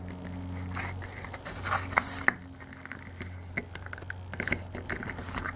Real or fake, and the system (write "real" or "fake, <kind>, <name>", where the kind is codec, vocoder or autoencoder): real